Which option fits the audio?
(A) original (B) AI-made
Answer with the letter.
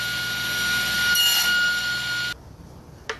A